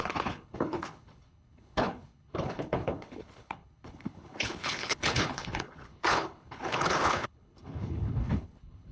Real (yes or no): no